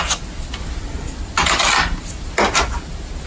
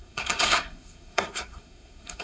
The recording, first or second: first